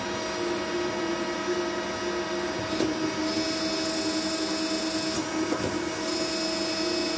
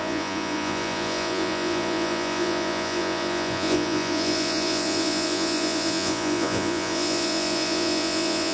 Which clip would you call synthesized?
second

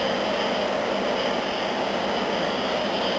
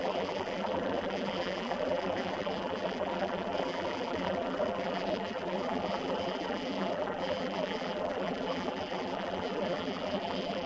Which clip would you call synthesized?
second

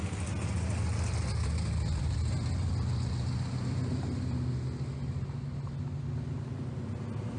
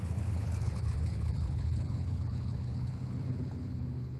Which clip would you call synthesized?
second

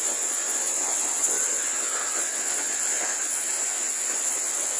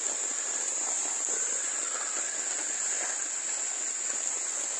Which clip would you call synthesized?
first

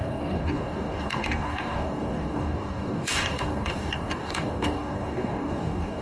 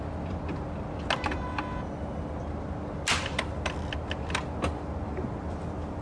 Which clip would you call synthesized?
first